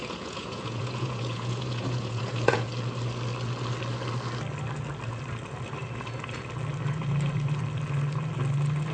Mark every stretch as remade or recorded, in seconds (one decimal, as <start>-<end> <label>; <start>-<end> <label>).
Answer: 0.0-2.7 remade; 2.7-8.9 recorded